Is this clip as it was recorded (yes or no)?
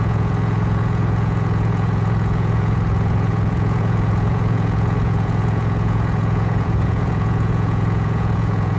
no